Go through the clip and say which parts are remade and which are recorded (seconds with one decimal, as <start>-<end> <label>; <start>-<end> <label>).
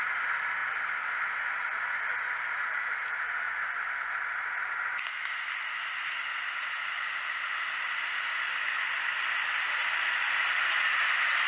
0.0-11.5 recorded